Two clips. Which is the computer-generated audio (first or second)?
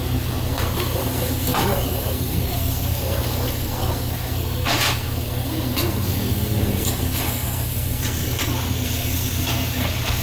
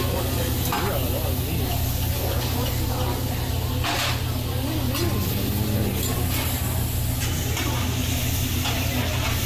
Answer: first